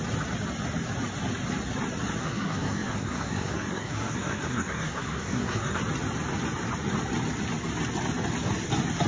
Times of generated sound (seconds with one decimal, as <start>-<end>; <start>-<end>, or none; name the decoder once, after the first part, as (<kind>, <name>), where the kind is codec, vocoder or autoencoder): 2.2-5.8 (codec, SNAC)